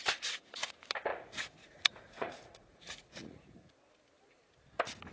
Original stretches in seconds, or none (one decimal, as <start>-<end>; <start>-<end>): 0.0-1.1; 3.7-5.1